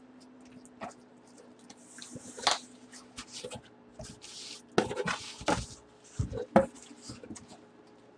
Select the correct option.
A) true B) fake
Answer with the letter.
A